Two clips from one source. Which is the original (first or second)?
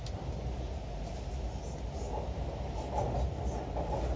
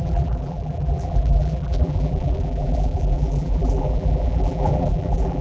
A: first